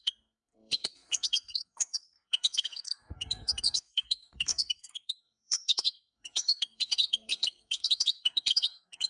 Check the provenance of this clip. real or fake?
fake